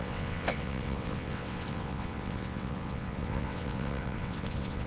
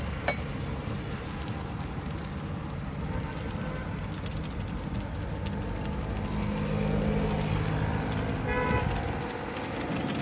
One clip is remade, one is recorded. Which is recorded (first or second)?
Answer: second